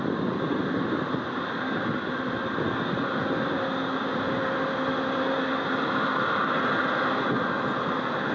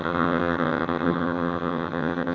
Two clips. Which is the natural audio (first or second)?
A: first